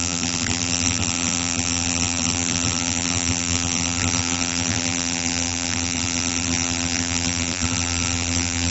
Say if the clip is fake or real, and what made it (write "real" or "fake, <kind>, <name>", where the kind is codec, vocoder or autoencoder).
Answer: fake, vocoder, BigVGAN v2